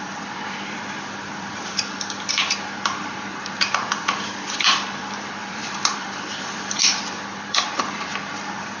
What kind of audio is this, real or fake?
fake